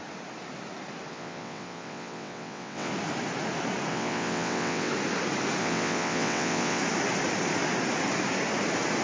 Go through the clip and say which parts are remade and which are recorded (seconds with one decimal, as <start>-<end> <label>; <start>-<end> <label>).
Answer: 0.0-1.1 recorded; 1.1-2.9 remade; 2.9-3.9 recorded; 3.9-4.9 remade; 4.9-5.6 recorded; 5.6-6.8 remade; 6.8-9.0 recorded